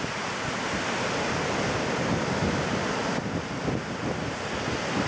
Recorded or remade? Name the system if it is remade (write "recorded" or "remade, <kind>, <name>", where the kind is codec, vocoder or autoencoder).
recorded